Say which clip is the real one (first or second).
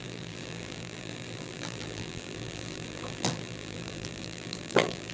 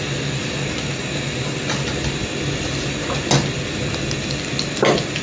second